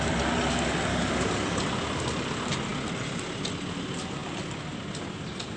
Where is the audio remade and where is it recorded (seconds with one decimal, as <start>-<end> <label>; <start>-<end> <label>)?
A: 0.0-0.9 recorded; 0.9-1.6 remade; 1.6-5.6 recorded

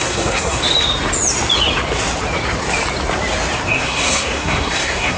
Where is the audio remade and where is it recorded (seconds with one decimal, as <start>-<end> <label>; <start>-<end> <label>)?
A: 0.0-0.6 remade; 0.6-3.7 recorded; 3.7-5.2 remade

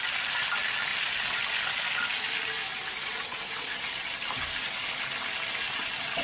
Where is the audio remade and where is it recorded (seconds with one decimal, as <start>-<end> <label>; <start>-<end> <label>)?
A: 0.0-3.0 recorded; 3.0-3.8 remade; 3.8-6.2 recorded

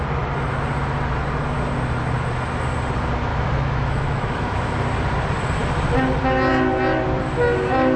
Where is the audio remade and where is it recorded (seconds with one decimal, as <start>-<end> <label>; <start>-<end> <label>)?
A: 0.0-3.3 recorded; 3.3-4.7 remade; 4.7-8.0 recorded